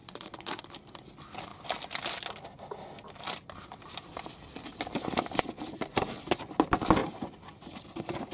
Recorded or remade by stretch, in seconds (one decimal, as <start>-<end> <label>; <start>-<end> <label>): 0.0-0.6 remade; 0.6-8.3 recorded